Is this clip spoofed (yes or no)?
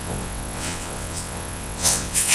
yes